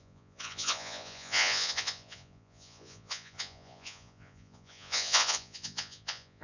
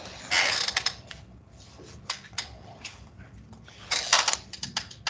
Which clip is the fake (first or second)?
first